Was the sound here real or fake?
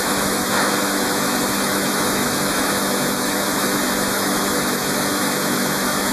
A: fake